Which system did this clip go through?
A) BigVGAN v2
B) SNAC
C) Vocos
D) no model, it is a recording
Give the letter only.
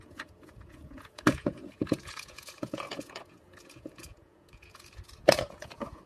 C